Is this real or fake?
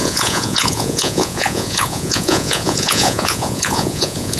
fake